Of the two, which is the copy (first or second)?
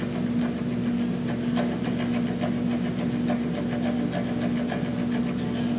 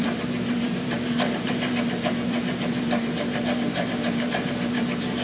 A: second